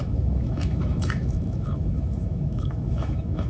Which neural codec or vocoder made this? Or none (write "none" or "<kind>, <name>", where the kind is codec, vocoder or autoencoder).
autoencoder, DAC-VAE